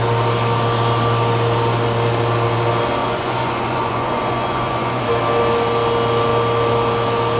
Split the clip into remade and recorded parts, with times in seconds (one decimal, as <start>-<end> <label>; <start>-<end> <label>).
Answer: 0.0-3.0 recorded; 3.0-5.0 remade; 5.0-7.4 recorded